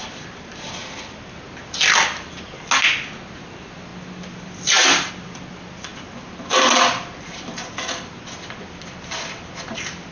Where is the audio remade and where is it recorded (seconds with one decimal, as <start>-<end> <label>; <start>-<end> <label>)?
0.0-10.1 recorded